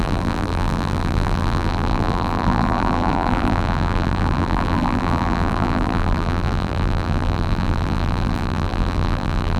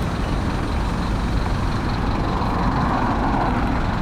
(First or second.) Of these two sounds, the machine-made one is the first